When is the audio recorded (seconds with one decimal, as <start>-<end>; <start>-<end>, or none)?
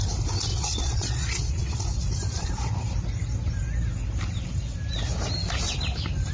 0.0-0.5; 2.5-6.3